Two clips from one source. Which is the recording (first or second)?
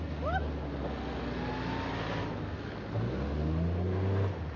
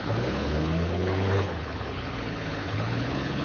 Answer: first